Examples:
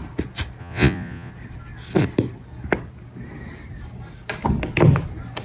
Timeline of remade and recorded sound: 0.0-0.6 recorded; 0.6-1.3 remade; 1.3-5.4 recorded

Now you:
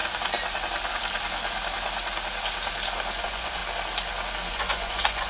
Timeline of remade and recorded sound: 0.0-3.2 recorded; 3.2-3.6 remade; 3.6-4.5 recorded; 4.5-5.3 remade

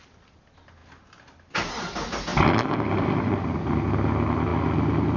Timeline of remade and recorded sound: 0.0-5.2 recorded